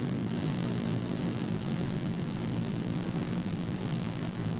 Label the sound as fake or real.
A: fake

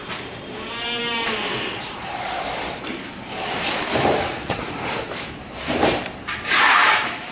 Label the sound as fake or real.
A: fake